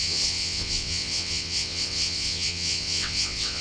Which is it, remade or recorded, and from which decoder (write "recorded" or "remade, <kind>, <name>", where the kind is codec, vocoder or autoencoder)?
remade, vocoder, WaveNeXt